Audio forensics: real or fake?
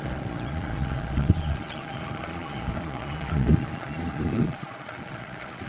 fake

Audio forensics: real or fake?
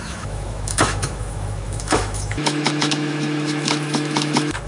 fake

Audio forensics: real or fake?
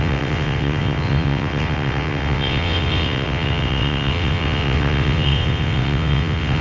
fake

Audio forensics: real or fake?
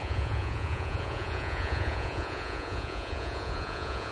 fake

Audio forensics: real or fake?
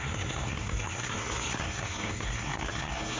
fake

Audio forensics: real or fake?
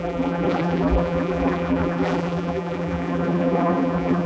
fake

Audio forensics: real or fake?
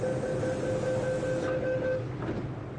real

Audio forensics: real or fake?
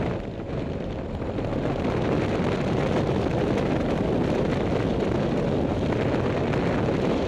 real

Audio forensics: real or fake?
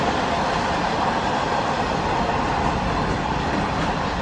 real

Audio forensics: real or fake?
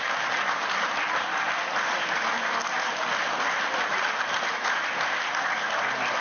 real